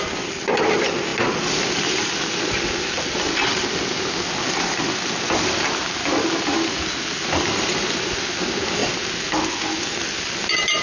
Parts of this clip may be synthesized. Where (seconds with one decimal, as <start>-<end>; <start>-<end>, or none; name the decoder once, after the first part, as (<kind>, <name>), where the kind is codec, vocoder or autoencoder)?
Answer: none